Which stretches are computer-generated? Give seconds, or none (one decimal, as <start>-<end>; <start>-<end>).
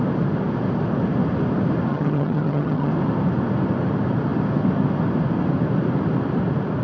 1.9-2.9